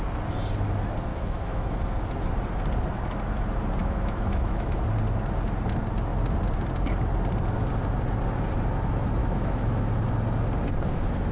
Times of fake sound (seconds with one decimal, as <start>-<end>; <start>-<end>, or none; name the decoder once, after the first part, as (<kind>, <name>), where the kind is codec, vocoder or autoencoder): 1.1-1.8 (autoencoder, DAC-VAE); 3.8-4.8; 9.2-9.9